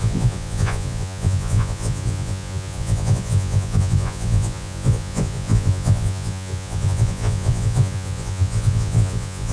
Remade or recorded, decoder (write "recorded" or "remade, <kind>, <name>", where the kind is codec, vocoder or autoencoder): remade, vocoder, Vocos